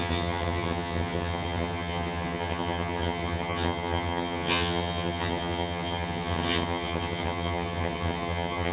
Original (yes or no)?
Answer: no